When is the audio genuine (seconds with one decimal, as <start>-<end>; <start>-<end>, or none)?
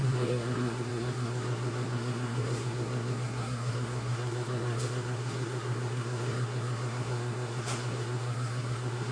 none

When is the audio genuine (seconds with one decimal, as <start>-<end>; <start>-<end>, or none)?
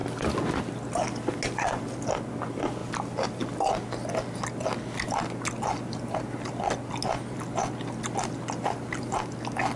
0.0-9.8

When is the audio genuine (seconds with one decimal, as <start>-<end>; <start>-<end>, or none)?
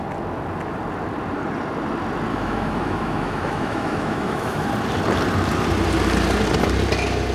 0.0-2.3; 4.7-7.3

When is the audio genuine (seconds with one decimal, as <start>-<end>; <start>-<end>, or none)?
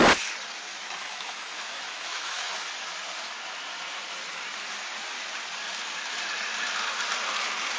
0.0-0.7; 2.5-7.8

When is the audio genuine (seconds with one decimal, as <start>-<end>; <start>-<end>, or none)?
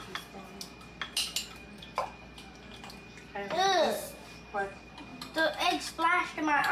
0.0-6.7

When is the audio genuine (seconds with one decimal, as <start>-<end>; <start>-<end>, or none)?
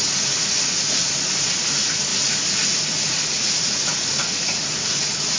none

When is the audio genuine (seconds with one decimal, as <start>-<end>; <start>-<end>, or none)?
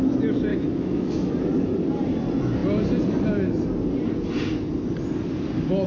0.0-0.5; 1.3-5.9